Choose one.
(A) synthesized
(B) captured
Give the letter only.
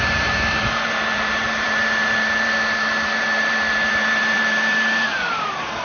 A